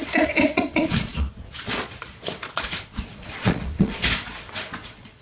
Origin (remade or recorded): remade